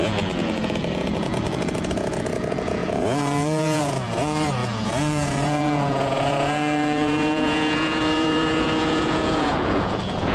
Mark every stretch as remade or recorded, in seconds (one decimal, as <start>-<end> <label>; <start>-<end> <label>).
0.0-10.3 remade